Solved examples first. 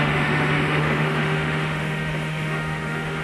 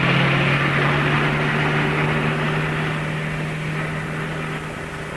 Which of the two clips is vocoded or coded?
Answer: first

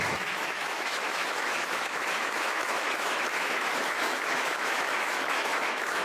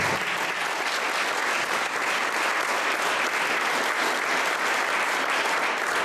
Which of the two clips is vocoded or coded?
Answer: first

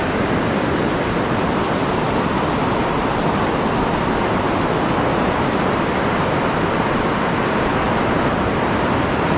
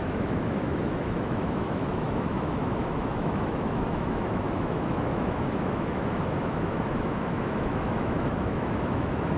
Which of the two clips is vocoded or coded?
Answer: second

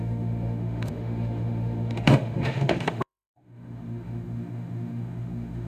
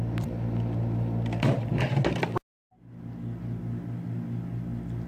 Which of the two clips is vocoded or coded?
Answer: first